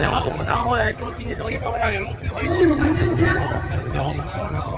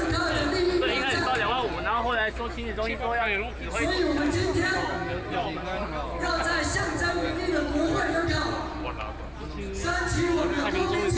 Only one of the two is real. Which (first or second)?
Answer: second